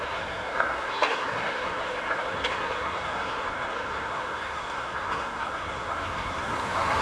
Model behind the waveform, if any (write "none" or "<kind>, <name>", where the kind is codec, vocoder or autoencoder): codec, SNAC